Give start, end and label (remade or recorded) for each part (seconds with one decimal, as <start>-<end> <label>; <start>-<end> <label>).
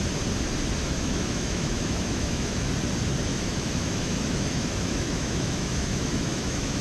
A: 0.0-0.8 recorded; 0.8-2.7 remade; 2.7-3.3 recorded; 3.3-6.8 remade